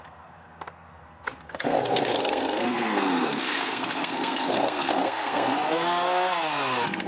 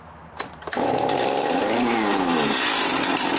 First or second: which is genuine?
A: second